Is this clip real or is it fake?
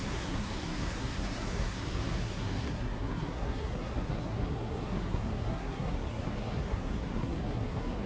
fake